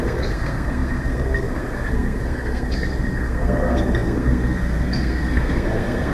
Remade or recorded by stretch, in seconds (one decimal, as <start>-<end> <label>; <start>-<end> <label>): 0.0-6.1 remade